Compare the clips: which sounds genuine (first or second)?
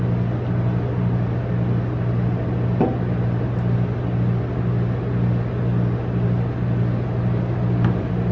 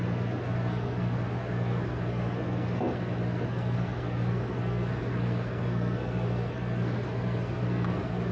first